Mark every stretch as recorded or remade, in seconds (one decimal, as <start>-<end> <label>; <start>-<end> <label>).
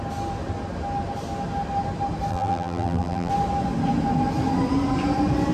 0.0-2.3 recorded; 2.3-3.3 remade; 3.3-5.5 recorded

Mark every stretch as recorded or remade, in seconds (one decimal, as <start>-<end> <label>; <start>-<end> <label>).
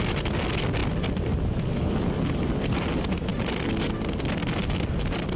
0.0-0.8 recorded; 0.8-2.0 remade; 2.0-5.4 recorded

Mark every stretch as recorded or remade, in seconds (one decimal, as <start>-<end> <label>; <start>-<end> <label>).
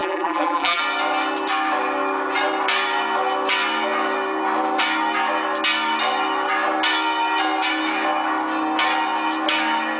0.0-0.8 remade; 0.8-10.0 recorded